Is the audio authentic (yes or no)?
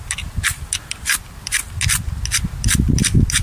yes